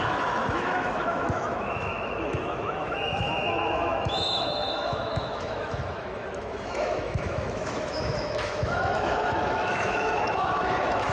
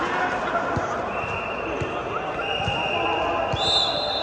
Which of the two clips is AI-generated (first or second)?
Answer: first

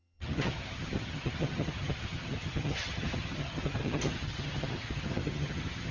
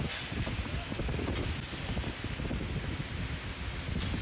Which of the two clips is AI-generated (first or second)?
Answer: first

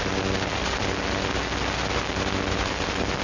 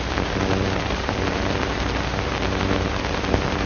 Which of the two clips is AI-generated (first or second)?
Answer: second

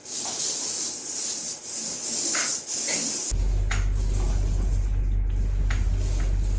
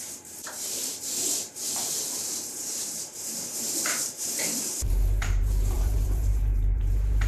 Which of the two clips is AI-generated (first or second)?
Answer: second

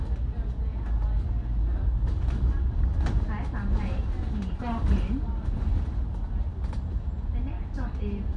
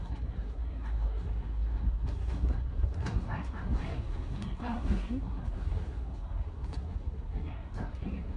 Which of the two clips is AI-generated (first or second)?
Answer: second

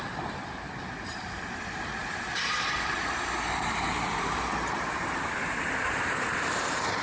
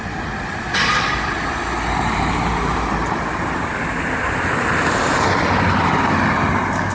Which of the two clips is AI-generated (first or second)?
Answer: first